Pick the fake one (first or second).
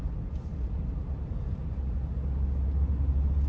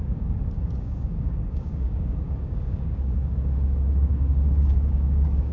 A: second